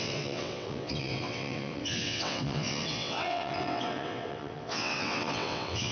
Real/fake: fake